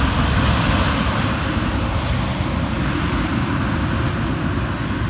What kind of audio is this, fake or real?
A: real